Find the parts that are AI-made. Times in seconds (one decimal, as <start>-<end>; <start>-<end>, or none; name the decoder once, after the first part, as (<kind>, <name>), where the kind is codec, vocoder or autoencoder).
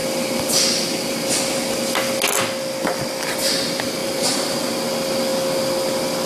4.0-4.7 (vocoder, BigVGAN v2)